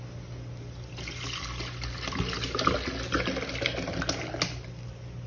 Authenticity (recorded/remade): recorded